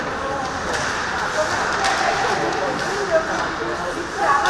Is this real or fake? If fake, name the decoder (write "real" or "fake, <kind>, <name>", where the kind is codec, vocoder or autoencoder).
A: real